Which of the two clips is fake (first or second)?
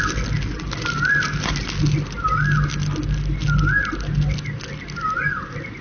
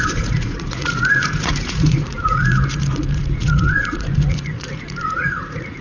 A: second